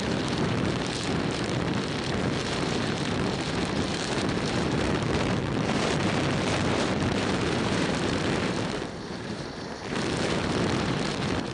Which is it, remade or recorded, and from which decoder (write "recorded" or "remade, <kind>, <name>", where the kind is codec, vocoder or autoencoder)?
remade, vocoder, BigVGAN v2